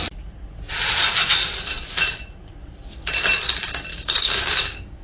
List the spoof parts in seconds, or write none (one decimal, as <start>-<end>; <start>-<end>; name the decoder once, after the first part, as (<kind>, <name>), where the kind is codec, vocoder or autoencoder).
3.9-5.0 (codec, DAC)